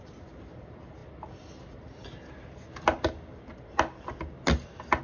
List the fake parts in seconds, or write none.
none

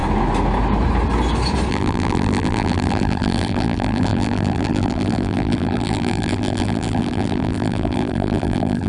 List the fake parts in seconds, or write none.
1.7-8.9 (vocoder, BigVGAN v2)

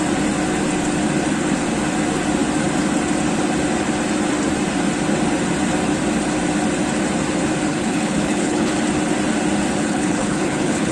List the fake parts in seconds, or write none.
7.7-8.7 (codec, HILCodec); 9.8-10.9

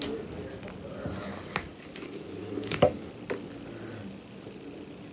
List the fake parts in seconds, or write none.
1.3-3.1 (codec, DAC)

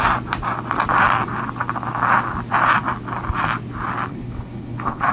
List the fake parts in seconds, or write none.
4.1-5.1 (codec, HILCodec)

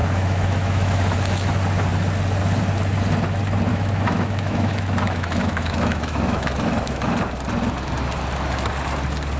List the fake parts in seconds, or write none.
0.0-1.5 (autoencoder, DAC-VAE); 3.7-7.1